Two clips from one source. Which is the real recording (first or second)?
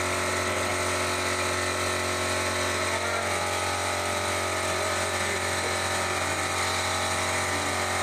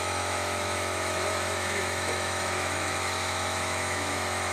first